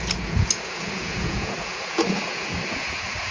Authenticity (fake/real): fake